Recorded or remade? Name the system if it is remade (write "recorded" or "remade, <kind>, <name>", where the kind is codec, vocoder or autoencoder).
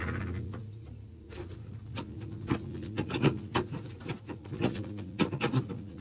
remade, vocoder, Vocos